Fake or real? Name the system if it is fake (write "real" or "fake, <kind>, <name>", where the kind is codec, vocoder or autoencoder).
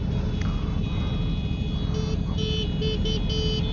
real